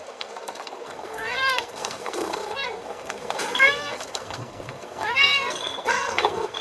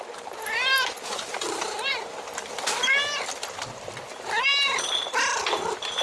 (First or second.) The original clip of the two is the second